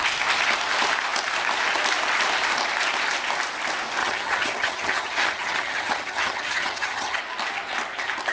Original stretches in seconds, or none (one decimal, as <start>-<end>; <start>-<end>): 0.0-4.0; 7.2-8.3